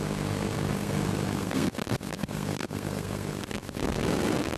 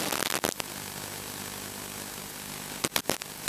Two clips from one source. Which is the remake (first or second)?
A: first